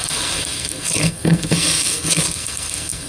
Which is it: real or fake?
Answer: fake